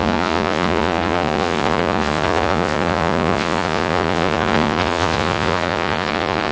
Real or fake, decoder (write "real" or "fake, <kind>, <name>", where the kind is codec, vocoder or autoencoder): fake, vocoder, Vocos